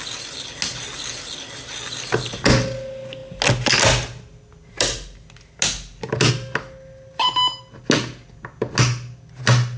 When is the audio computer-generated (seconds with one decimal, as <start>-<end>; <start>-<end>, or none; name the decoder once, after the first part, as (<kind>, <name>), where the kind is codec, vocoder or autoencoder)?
none